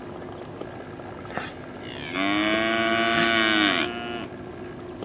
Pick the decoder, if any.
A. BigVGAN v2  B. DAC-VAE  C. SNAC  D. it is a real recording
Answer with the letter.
D